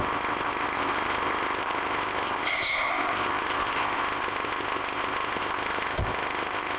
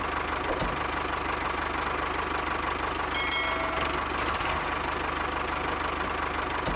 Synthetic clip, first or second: first